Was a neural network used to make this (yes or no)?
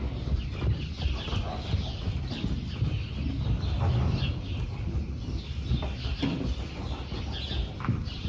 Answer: no